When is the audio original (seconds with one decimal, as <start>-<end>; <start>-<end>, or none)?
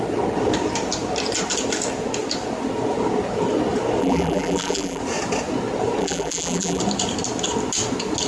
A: 0.0-4.0; 5.0-6.0; 6.8-8.3